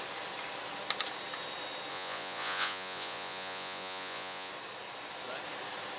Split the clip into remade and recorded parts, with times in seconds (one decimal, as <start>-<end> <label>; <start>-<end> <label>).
0.0-1.9 recorded; 1.9-4.5 remade; 4.5-6.0 recorded